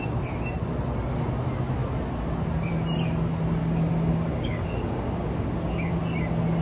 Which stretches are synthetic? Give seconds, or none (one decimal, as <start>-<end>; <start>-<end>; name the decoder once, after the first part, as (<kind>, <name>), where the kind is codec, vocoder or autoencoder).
3.6-5.9 (codec, DAC)